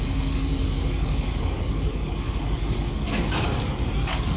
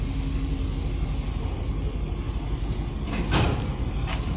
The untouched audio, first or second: second